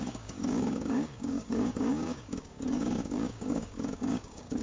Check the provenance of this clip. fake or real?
fake